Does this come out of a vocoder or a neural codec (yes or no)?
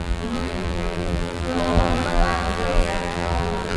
yes